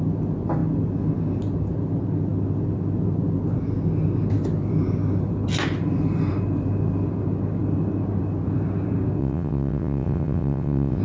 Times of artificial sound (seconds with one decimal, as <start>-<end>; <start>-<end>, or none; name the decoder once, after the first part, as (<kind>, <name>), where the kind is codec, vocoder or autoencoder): 9.2-11.0 (vocoder, WaveNeXt)